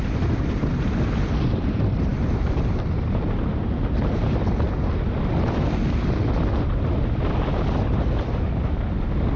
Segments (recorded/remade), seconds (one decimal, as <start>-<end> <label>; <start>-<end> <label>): 0.0-9.4 recorded